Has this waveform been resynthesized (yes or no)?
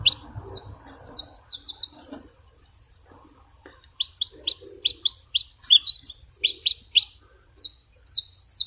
yes